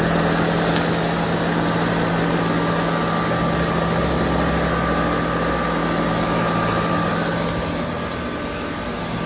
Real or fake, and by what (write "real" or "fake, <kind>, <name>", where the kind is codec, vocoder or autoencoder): real